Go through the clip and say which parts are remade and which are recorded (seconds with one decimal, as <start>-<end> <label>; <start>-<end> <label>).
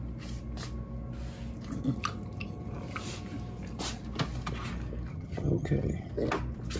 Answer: 0.0-5.1 recorded; 5.1-6.1 remade; 6.1-6.8 recorded